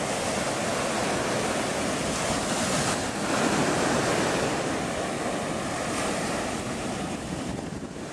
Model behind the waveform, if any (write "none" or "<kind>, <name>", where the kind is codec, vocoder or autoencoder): none